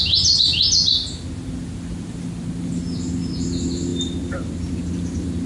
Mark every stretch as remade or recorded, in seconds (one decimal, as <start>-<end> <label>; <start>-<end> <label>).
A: 0.0-5.5 recorded